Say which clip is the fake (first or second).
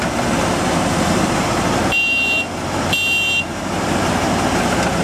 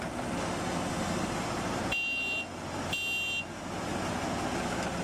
first